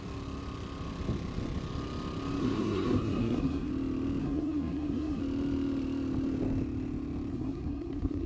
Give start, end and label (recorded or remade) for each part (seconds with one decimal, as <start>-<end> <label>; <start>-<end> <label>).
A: 0.0-2.4 recorded; 2.4-3.7 remade; 3.7-4.2 recorded; 4.2-5.2 remade; 5.2-7.3 recorded; 7.3-8.3 remade